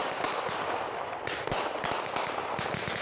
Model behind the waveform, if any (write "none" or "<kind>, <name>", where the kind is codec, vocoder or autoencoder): none